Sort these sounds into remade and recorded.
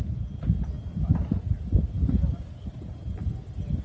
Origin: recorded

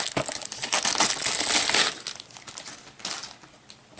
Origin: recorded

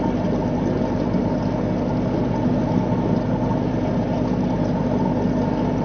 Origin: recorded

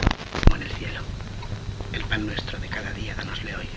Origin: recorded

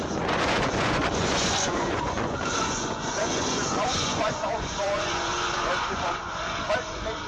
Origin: remade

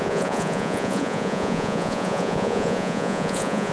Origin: remade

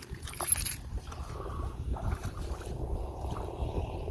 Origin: recorded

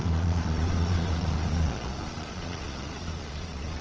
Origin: remade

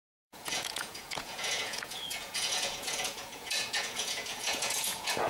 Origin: remade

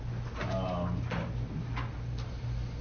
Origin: recorded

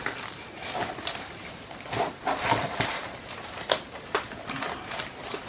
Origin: recorded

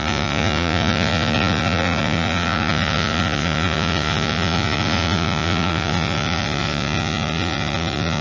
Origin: remade